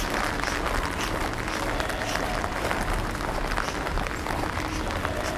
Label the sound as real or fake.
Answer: real